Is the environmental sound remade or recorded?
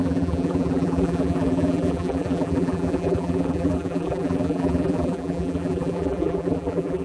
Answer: remade